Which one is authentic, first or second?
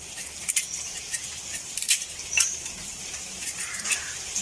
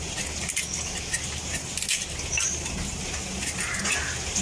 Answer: second